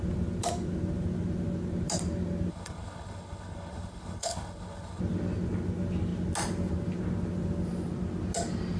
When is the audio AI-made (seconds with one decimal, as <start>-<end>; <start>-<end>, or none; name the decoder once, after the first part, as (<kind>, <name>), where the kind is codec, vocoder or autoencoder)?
2.5-5.0 (codec, HILCodec)